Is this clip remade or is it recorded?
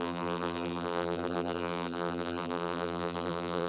remade